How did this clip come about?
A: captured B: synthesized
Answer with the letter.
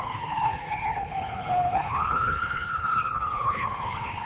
B